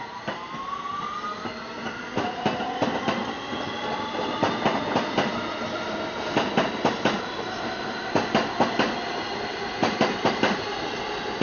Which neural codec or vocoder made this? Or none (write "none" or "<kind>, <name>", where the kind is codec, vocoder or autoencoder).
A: none